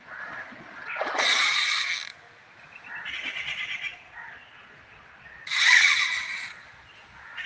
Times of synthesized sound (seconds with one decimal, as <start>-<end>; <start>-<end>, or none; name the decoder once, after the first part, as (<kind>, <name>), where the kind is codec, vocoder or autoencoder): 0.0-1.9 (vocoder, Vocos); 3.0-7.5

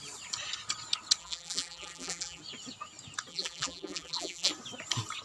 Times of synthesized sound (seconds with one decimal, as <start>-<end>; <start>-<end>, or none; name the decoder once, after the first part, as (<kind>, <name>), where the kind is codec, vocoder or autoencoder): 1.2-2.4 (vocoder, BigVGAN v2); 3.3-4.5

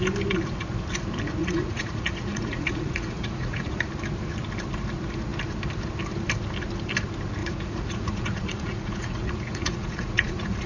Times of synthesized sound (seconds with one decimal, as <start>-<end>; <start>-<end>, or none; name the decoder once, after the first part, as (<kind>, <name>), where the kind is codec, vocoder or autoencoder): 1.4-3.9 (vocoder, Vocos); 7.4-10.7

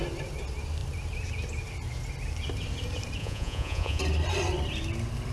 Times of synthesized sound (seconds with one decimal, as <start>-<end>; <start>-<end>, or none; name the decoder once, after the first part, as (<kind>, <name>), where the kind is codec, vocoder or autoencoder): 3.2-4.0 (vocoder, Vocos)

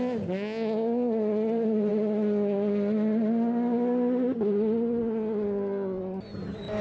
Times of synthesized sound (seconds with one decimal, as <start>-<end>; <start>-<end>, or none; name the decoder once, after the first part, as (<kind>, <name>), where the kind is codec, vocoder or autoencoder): none

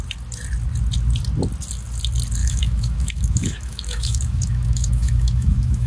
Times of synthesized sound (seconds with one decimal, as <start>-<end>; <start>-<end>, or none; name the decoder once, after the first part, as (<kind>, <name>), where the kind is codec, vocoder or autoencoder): 2.4-5.9 (autoencoder, DAC-VAE)

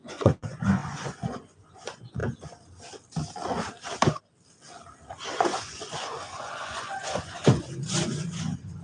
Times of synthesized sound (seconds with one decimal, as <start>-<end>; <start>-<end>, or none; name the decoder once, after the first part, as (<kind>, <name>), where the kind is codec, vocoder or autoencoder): 0.0-2.2 (vocoder, Vocos); 5.3-8.8

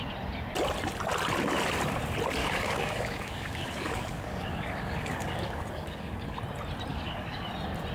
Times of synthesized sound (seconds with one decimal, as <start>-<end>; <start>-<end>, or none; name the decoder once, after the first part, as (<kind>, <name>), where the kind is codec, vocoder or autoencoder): 2.4-6.4 (codec, DAC); 6.9-7.5